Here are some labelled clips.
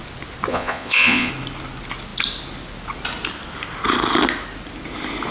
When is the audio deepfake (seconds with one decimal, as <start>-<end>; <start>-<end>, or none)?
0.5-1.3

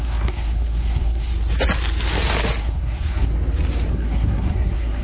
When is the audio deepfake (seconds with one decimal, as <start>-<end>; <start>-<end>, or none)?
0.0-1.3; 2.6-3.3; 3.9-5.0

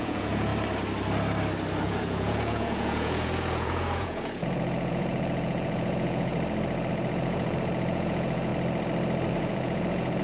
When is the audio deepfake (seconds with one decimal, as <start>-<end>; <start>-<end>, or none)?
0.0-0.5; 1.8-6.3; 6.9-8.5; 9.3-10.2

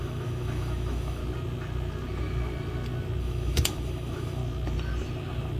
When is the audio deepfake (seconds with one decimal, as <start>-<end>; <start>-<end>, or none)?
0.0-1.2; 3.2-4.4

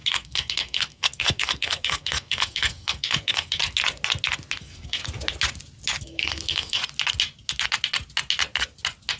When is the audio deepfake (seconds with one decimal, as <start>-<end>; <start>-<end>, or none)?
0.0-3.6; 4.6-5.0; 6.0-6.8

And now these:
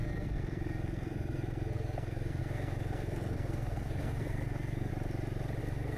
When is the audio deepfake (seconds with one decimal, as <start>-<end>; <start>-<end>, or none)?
0.0-4.9; 5.6-6.0

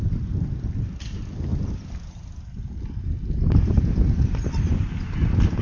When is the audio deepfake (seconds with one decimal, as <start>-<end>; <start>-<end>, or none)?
none